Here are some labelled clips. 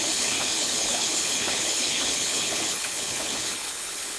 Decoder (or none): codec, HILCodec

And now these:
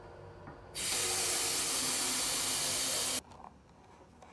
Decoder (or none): none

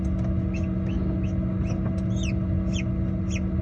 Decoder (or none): none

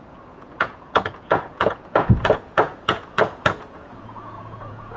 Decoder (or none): vocoder, Vocos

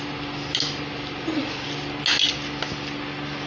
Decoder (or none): none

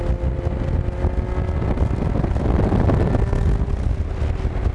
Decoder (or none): none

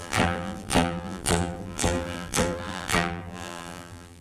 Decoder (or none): vocoder, BigVGAN v2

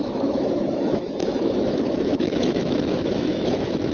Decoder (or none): autoencoder, DAC-VAE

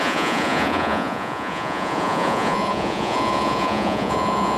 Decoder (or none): vocoder, Vocos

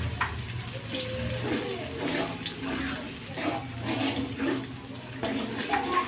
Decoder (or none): none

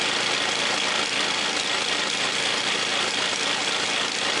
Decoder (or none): none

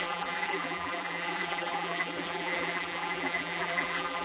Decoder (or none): vocoder, BigVGAN v2